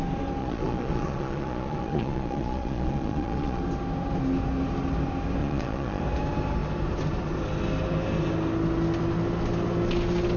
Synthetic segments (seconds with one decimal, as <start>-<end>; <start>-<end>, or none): 0.4-3.6; 5.4-6.0